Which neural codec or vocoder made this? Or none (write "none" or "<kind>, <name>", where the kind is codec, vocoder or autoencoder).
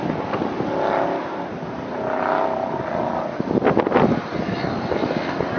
none